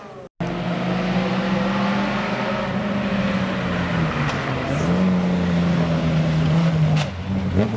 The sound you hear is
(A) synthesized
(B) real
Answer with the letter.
B